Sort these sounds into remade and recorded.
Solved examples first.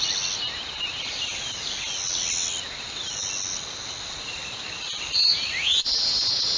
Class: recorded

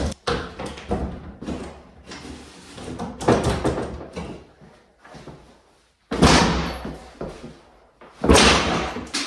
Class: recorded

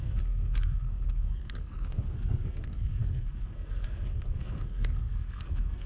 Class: remade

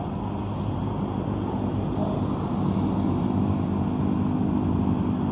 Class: recorded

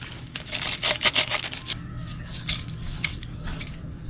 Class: remade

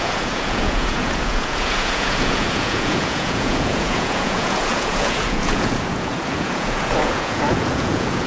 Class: remade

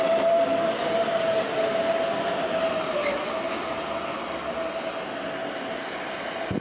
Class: recorded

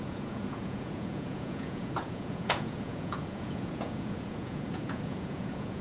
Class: remade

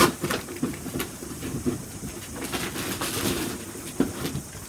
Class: recorded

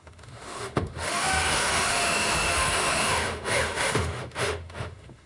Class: remade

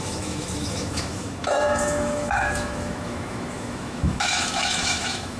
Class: remade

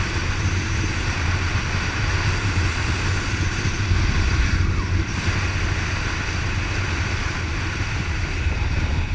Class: recorded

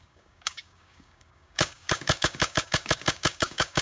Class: remade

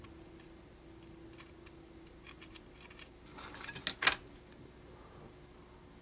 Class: recorded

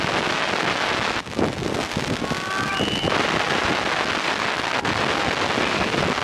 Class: recorded